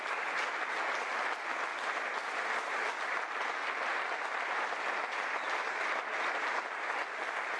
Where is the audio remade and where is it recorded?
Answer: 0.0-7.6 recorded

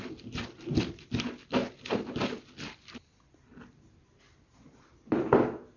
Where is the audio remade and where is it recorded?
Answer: 0.0-5.8 recorded

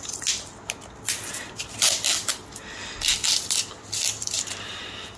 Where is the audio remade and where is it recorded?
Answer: 0.0-5.2 recorded